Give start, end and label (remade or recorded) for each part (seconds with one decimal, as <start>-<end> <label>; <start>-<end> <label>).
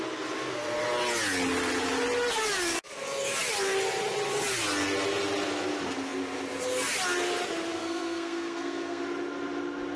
0.0-7.8 recorded; 7.8-9.0 remade; 9.0-10.0 recorded